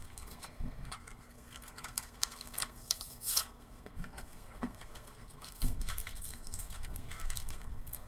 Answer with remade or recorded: remade